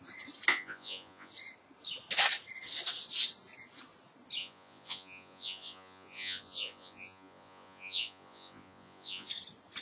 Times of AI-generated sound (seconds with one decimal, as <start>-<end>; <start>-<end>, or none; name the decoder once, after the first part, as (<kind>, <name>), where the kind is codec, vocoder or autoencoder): 0.5-1.3 (vocoder, Vocos); 4.4-9.3